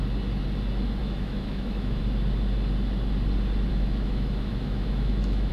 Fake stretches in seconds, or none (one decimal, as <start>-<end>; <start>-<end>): 1.0-2.0; 3.7-5.5